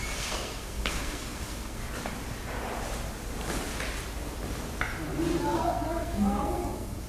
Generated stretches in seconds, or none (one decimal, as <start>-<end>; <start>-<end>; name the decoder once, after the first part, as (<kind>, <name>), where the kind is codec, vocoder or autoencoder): 0.0-1.8 (codec, SNAC); 5.4-7.1